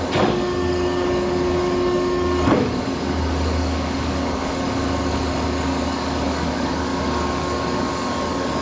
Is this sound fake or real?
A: fake